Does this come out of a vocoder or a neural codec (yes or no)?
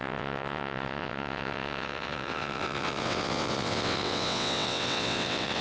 yes